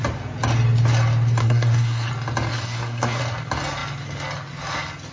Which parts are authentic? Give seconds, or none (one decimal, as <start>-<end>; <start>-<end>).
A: 0.0-1.4; 2.1-2.5; 3.2-5.1